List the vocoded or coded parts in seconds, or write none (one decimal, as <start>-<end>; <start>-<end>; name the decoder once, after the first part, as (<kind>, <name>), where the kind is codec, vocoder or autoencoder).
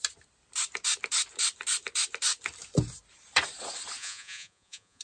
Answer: 4.0-5.0 (vocoder, Vocos)